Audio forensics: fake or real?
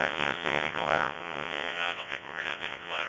fake